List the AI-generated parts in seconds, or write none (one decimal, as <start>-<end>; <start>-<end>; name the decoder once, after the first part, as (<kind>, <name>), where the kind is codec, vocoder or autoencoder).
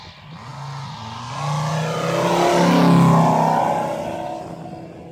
none